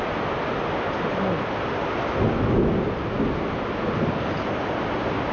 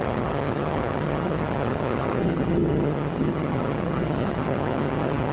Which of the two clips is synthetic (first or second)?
second